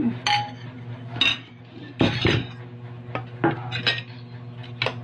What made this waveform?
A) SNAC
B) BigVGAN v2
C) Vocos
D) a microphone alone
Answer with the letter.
D